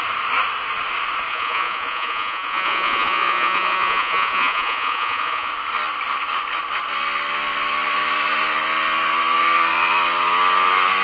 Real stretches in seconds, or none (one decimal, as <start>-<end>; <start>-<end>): 0.0-1.3; 5.5-11.0